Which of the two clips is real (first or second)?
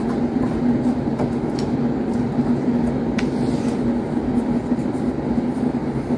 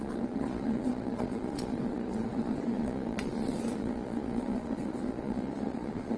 first